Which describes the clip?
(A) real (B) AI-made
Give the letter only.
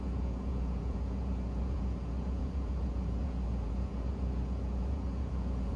B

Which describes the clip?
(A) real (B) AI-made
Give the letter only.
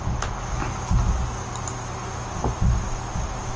A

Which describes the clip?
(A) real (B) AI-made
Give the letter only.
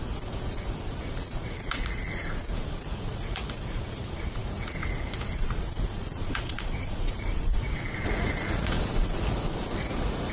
B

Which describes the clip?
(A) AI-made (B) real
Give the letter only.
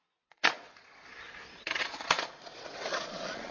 A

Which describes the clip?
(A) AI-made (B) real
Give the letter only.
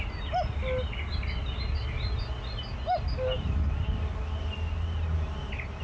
B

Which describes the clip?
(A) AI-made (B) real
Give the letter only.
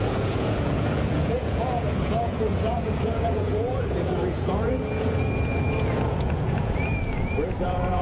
A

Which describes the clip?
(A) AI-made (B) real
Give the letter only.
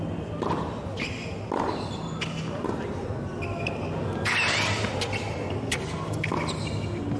B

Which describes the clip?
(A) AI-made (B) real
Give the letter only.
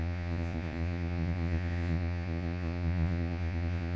A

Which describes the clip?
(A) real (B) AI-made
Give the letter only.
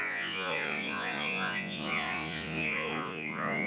B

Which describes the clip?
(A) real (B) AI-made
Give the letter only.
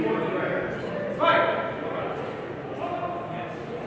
A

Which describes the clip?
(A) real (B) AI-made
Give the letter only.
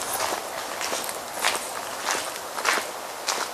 A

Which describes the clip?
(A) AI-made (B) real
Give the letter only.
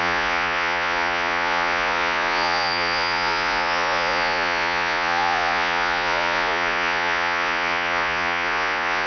A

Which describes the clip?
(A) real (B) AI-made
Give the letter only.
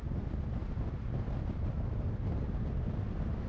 A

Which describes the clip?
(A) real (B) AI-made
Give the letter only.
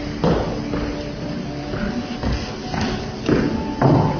A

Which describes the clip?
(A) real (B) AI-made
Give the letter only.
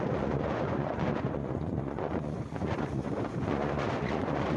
B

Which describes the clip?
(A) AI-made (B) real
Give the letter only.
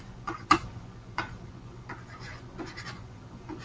A